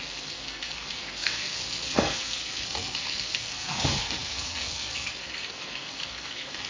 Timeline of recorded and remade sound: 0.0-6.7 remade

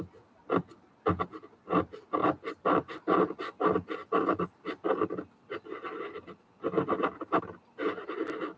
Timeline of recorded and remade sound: 0.0-8.6 recorded

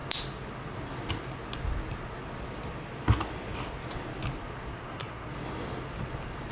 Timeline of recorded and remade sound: 0.0-4.7 recorded; 4.7-5.3 remade; 5.3-6.5 recorded

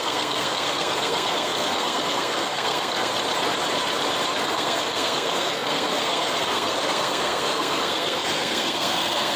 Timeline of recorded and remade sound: 0.0-3.1 remade; 3.1-4.3 recorded; 4.3-9.4 remade

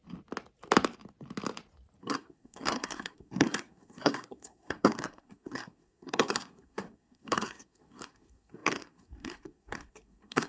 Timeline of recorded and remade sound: 0.0-2.0 recorded; 2.0-10.5 remade